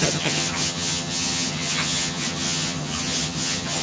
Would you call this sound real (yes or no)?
no